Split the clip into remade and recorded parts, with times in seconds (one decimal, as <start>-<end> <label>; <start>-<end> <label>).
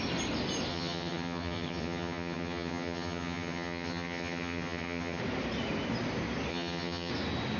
0.0-0.7 recorded; 0.7-5.2 remade; 5.2-6.5 recorded; 6.5-7.1 remade; 7.1-7.6 recorded